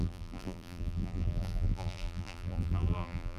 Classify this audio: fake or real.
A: fake